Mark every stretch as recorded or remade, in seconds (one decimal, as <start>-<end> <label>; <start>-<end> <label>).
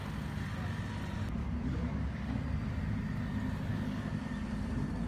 0.0-1.4 recorded; 1.4-2.4 remade; 2.4-3.7 recorded; 3.7-4.2 remade; 4.2-5.1 recorded